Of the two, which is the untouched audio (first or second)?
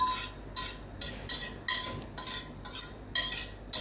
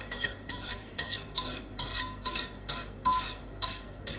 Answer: first